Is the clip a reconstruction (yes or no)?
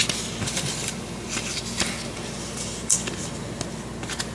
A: no